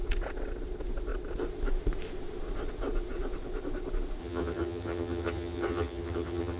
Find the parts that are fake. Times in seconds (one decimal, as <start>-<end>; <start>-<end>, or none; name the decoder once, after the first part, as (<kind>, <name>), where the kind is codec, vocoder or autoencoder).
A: 4.2-6.6 (vocoder, HiFi-GAN)